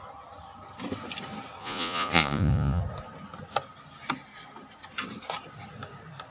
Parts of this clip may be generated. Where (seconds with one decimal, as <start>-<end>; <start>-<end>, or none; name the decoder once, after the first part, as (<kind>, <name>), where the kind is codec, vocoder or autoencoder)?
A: 1.6-2.8 (vocoder, Vocos)